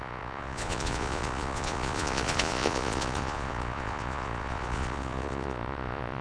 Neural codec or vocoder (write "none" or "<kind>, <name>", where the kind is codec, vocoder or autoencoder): vocoder, Vocos